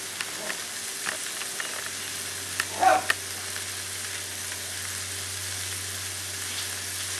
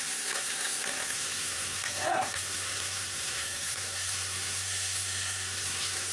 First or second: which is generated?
second